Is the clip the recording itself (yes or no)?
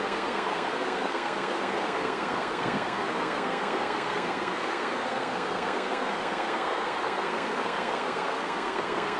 no